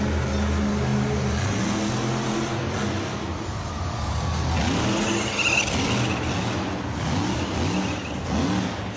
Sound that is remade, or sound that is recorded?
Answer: recorded